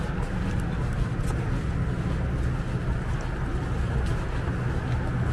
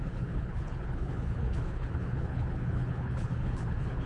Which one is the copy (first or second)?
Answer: second